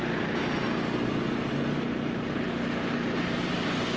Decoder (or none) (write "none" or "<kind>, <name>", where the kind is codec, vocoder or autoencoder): none